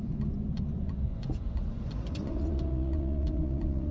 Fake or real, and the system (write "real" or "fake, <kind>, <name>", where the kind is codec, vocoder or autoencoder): fake, vocoder, Vocos